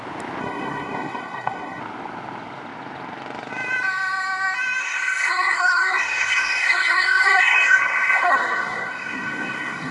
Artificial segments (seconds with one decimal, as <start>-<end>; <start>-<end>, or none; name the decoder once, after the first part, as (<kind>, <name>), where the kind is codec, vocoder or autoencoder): 0.4-1.8 (codec, SNAC); 4.8-9.9